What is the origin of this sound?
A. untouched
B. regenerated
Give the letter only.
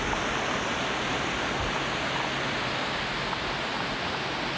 A